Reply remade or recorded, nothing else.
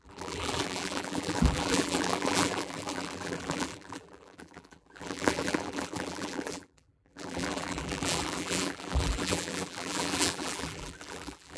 remade